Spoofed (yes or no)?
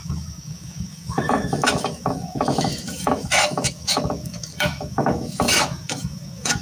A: yes